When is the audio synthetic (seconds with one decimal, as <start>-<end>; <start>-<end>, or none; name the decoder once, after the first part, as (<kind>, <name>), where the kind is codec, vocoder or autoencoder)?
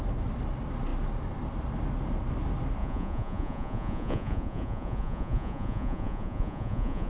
2.8-7.1 (vocoder, Vocos)